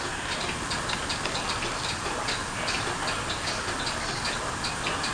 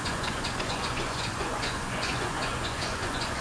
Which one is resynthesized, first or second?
second